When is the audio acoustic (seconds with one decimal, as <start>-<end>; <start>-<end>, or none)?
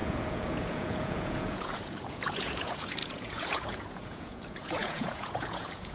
none